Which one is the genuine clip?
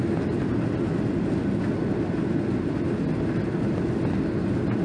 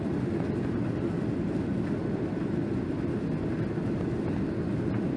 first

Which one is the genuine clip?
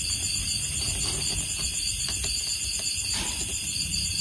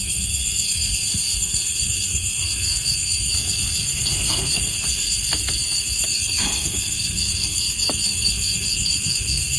first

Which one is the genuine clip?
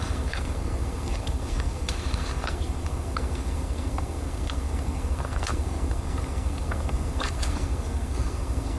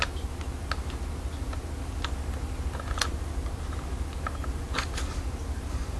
second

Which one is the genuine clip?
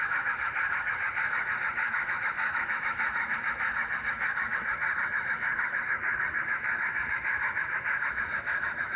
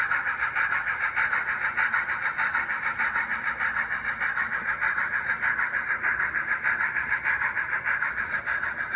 second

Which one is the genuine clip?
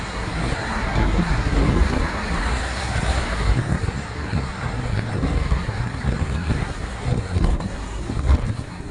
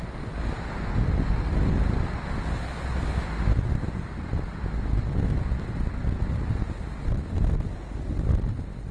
second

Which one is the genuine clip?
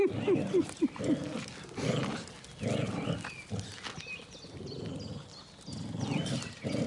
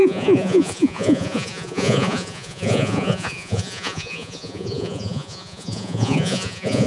first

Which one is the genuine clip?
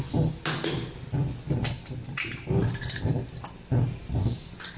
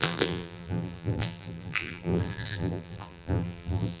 first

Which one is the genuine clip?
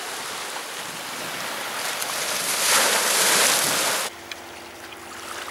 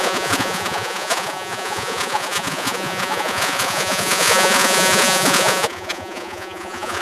first